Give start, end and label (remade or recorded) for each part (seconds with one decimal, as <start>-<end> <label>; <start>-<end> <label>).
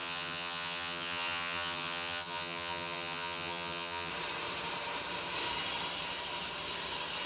0.0-4.1 remade; 4.1-7.3 recorded